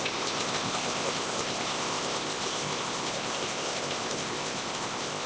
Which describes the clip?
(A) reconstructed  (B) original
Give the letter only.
A